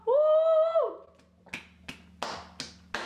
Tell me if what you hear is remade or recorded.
recorded